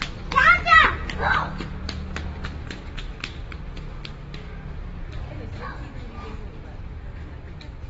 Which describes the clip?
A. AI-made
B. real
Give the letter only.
B